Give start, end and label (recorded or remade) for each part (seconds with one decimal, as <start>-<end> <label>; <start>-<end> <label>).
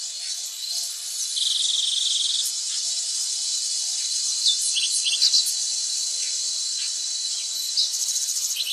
0.0-8.7 recorded